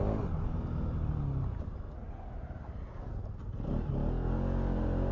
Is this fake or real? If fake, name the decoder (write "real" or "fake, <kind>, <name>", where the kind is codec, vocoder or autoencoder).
real